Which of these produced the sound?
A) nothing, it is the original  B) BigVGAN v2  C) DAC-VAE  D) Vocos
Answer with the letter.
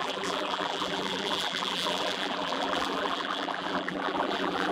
B